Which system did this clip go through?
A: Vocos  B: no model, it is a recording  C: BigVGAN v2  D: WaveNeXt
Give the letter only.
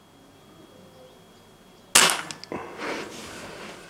B